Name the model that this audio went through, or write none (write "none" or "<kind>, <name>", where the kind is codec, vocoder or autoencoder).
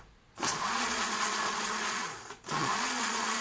vocoder, Vocos